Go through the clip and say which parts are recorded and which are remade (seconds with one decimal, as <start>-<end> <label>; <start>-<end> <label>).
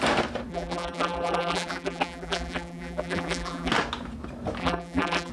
0.0-0.5 recorded; 0.5-3.7 remade; 3.7-4.6 recorded; 4.6-5.3 remade